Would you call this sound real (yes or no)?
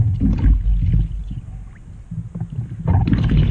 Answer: yes